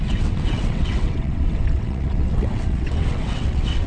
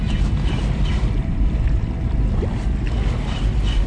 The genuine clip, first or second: second